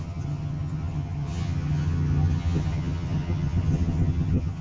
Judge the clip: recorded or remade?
remade